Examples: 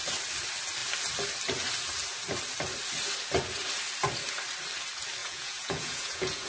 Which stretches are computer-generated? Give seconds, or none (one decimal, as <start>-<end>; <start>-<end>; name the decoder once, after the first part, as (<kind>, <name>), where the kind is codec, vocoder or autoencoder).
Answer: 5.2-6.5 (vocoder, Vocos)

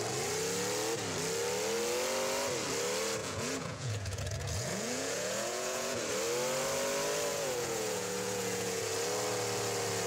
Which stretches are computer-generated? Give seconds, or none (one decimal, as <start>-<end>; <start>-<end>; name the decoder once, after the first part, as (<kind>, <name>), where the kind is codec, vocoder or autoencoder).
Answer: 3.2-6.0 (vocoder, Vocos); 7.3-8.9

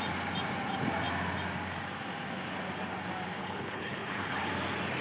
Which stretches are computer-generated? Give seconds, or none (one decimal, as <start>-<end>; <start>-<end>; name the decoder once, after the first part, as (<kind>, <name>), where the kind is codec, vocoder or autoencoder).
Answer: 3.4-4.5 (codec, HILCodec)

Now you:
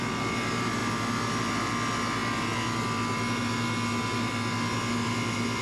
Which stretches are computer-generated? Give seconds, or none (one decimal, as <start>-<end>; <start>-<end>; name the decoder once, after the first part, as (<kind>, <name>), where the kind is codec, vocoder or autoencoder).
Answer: none